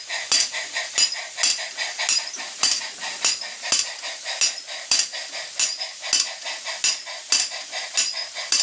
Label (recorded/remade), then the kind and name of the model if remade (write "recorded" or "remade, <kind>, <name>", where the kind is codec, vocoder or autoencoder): recorded